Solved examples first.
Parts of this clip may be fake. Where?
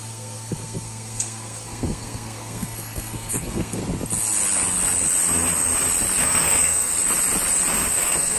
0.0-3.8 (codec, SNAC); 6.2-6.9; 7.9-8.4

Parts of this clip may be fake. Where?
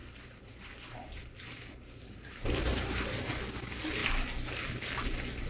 0.0-3.3 (vocoder, BigVGAN v2)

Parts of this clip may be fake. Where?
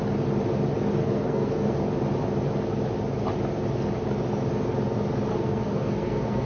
1.0-1.8 (codec, SNAC); 5.3-6.5